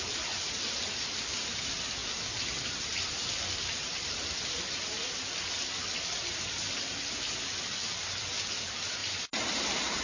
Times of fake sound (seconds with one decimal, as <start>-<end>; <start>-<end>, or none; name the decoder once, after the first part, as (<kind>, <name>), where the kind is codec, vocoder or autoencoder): none